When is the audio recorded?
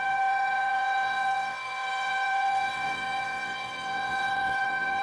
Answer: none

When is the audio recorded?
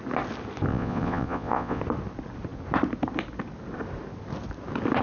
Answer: 0.0-0.7; 1.8-5.0